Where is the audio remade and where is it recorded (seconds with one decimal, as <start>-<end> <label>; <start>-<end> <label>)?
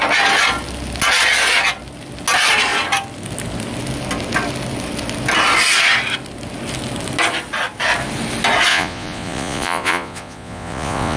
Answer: 0.0-8.7 recorded; 8.7-11.2 remade